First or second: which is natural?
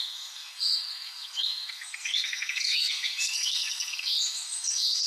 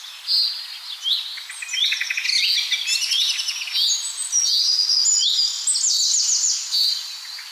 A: second